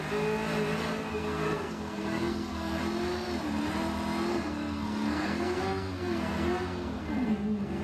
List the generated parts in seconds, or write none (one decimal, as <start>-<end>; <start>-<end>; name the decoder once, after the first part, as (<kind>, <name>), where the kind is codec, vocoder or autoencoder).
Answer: 1.1-2.8 (codec, SNAC); 4.3-7.8